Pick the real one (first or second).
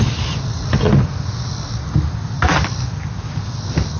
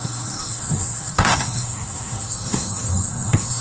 first